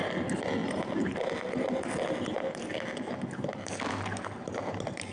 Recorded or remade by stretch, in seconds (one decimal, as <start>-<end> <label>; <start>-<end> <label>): 0.0-5.1 recorded